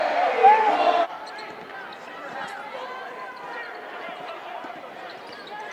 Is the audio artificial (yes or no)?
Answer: no